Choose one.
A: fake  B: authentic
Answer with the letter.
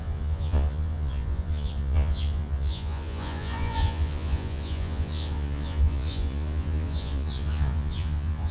A